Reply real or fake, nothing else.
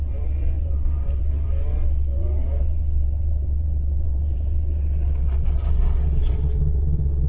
fake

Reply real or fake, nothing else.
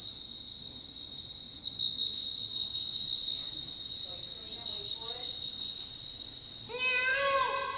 real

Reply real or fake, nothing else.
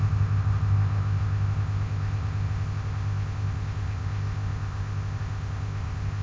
fake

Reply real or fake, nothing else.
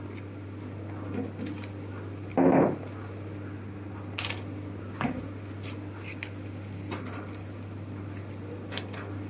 real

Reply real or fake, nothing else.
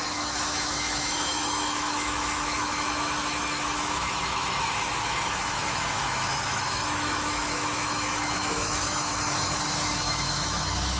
fake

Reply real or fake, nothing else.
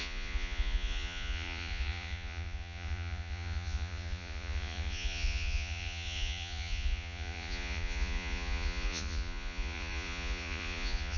fake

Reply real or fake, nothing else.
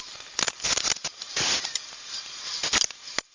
real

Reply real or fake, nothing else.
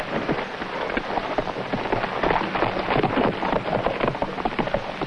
real